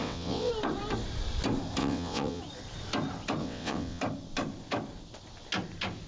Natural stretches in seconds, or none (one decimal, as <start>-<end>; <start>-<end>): 0.5-1.8; 2.4-3.4; 4.0-6.1